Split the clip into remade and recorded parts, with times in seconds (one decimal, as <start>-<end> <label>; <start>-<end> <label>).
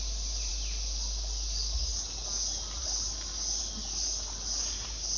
0.0-5.2 recorded